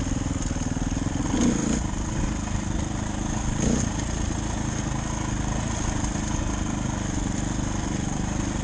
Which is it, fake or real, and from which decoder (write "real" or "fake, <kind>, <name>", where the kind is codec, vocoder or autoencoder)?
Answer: real